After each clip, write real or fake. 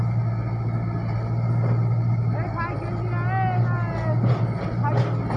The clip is real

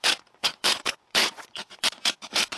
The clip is fake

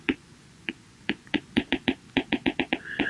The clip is fake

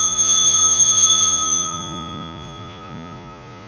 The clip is fake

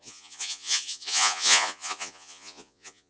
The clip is fake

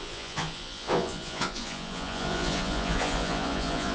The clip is fake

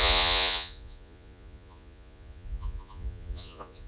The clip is fake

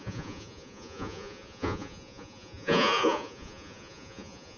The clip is fake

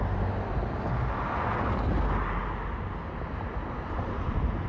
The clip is real